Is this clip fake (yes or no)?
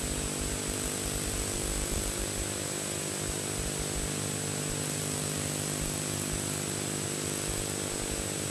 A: no